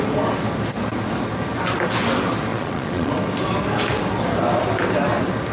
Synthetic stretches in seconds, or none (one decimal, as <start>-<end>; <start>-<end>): 2.5-3.1